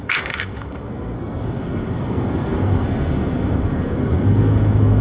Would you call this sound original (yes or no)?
no